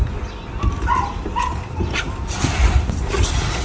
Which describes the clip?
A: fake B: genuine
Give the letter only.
B